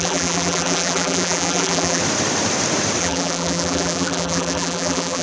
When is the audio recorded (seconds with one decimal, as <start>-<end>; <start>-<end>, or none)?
2.0-3.0